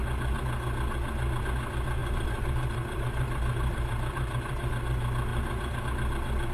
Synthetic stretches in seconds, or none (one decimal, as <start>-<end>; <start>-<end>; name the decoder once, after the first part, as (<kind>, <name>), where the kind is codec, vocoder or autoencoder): 2.0-4.7 (vocoder, BigVGAN v2); 5.3-5.8